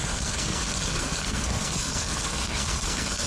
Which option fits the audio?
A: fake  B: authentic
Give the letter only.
A